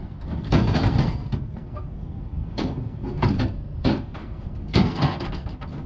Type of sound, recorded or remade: remade